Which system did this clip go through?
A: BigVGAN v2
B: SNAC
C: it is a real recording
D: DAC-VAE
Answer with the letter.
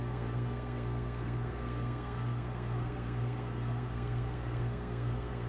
B